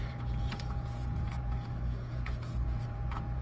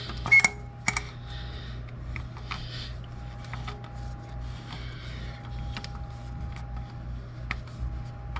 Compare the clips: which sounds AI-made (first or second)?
first